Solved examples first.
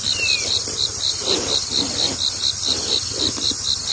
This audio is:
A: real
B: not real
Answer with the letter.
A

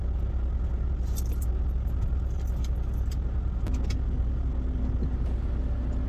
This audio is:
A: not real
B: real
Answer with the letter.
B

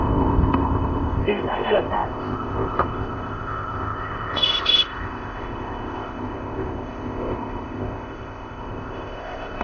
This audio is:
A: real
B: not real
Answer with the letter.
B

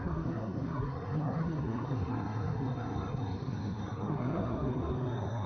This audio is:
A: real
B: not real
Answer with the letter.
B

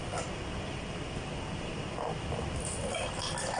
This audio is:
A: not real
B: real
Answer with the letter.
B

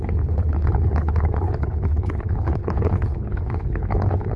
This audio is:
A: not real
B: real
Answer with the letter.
A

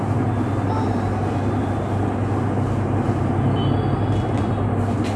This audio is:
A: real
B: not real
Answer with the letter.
A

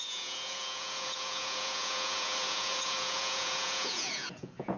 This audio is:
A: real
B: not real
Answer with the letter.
B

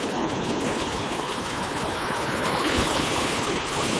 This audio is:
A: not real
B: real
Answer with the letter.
A